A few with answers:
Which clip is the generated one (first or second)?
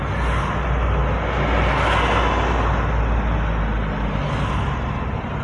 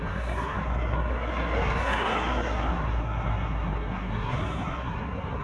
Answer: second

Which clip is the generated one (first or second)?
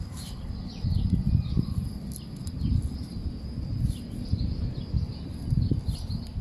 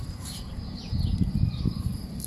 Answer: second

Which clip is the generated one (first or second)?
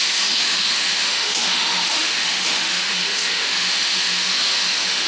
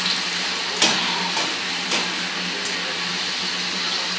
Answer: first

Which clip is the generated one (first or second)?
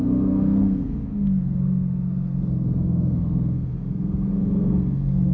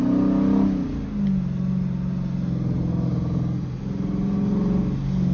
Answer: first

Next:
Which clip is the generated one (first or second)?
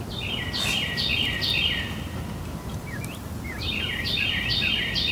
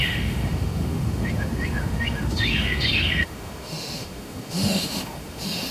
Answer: second